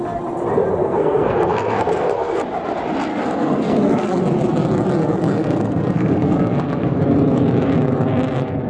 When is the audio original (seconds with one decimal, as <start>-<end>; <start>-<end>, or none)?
0.0-0.8; 2.4-3.1; 4.2-5.0; 7.0-8.7